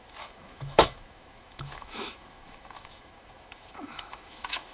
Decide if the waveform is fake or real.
fake